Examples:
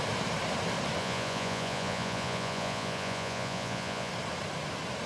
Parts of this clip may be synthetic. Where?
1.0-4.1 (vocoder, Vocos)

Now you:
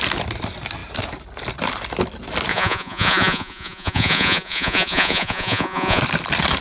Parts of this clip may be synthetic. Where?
2.5-6.0 (vocoder, Vocos)

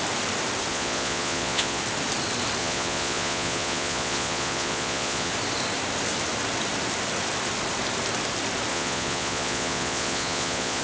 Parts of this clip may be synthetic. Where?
0.7-1.8 (vocoder, Vocos); 2.6-5.3; 8.7-10.8

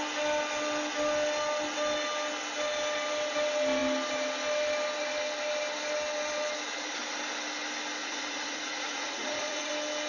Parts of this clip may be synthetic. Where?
8.0-9.7 (vocoder, Vocos)